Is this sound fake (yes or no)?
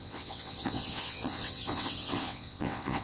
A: yes